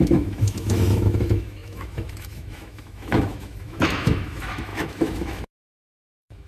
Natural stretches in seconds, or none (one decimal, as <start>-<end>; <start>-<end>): none